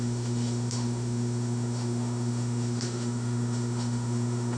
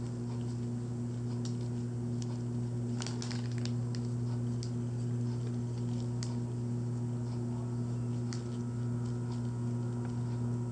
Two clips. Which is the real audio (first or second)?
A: second